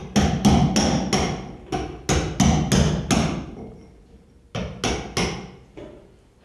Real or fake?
real